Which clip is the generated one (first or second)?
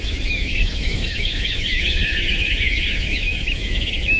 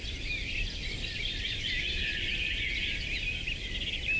first